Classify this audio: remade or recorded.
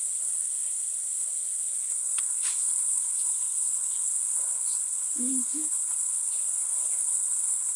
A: remade